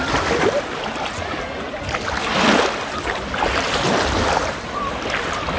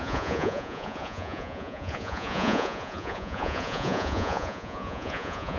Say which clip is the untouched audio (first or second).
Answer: first